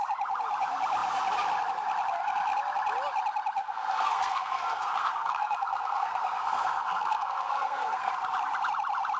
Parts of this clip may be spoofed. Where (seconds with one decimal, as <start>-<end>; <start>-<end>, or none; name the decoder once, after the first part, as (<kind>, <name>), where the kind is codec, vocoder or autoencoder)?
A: 3.6-8.1 (codec, SNAC)